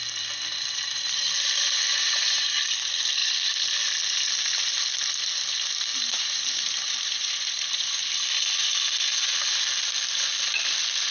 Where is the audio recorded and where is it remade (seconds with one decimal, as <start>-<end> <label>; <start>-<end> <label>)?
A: 0.0-1.9 recorded; 1.9-2.5 remade; 2.5-5.9 recorded; 5.9-8.1 remade; 8.1-11.1 recorded